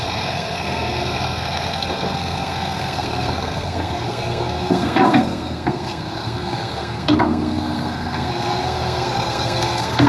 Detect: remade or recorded remade